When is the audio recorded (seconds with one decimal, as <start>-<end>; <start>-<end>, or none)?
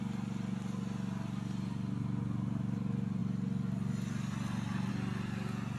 0.0-5.8